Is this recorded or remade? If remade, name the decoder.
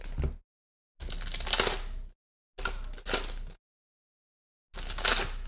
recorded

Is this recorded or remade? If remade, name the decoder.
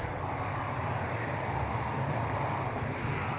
recorded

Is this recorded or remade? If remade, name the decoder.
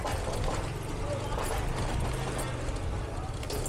recorded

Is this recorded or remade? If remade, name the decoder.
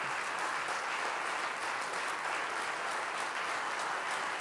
recorded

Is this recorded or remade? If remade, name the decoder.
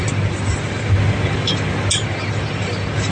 recorded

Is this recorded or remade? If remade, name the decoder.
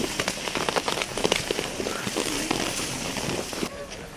recorded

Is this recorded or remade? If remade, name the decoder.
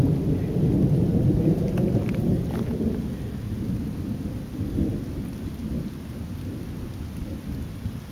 recorded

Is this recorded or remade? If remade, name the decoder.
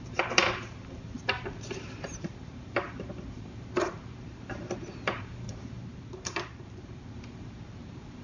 remade, vocoder, BigVGAN v2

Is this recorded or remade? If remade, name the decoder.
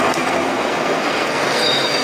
remade, codec, SNAC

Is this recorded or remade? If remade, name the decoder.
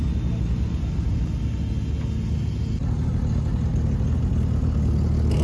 recorded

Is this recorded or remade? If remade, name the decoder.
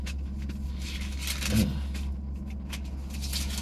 recorded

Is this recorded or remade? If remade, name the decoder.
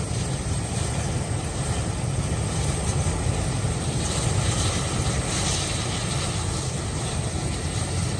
recorded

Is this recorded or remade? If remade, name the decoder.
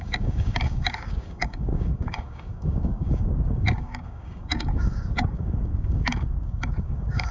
remade, codec, DAC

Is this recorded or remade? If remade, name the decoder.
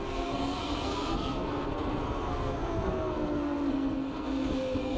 remade, codec, SNAC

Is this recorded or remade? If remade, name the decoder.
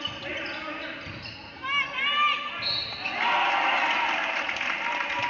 recorded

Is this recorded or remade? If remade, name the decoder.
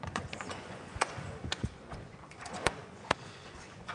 remade, vocoder, Vocos